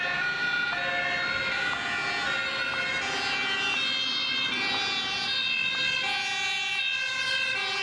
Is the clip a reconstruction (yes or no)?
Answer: no